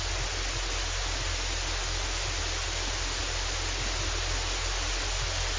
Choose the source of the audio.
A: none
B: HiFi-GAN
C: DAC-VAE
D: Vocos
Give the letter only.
A